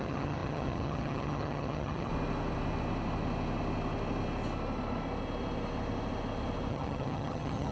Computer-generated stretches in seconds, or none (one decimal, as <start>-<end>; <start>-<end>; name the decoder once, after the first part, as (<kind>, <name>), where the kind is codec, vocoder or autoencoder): 0.0-2.1 (vocoder, HiFi-GAN); 6.7-7.7